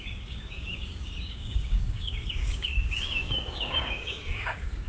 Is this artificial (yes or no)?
yes